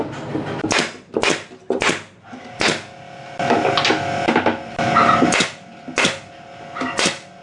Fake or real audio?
real